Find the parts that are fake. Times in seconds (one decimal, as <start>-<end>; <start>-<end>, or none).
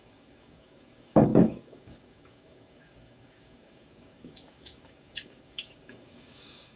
0.0-6.8